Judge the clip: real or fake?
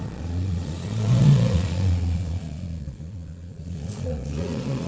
fake